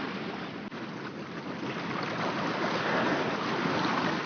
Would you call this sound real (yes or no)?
yes